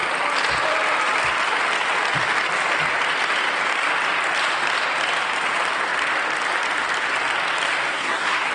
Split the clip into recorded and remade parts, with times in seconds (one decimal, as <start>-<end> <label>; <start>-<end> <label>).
0.0-7.9 recorded; 7.9-8.5 remade